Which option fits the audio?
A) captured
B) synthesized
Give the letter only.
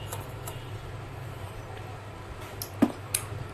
A